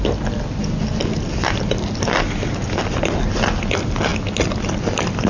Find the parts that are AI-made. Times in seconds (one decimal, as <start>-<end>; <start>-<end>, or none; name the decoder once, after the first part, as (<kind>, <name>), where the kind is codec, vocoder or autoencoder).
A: none